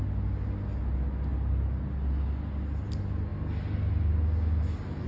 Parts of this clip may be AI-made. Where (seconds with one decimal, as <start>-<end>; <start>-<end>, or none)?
none